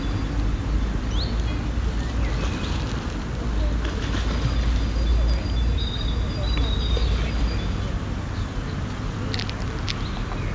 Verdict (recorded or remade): recorded